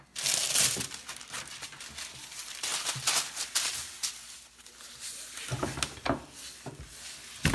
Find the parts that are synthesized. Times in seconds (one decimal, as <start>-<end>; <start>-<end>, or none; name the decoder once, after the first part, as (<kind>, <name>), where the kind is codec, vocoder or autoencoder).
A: none